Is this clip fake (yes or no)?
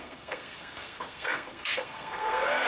yes